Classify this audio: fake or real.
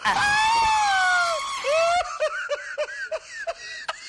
real